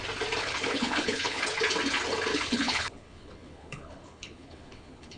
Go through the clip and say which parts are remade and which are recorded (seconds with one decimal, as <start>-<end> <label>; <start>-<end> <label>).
0.0-0.4 recorded; 0.4-1.4 remade; 1.4-2.3 recorded; 2.3-5.2 remade